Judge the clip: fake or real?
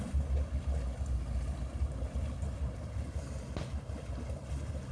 real